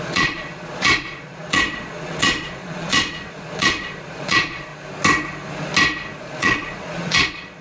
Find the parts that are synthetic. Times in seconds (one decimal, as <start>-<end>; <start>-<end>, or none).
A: 0.0-4.7; 6.2-7.6